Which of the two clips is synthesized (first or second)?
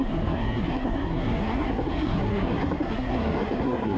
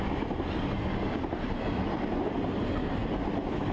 first